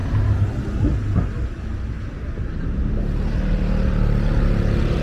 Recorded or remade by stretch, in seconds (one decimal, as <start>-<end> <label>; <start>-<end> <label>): 0.0-5.0 recorded